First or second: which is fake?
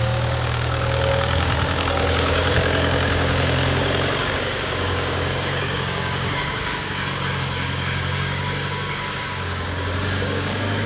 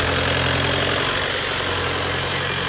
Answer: first